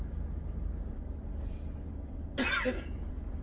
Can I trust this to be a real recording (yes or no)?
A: yes